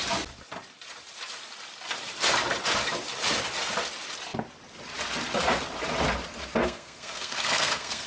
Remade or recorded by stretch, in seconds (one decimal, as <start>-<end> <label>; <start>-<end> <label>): 0.0-6.6 recorded; 6.6-8.1 remade